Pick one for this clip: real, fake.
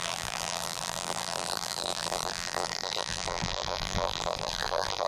fake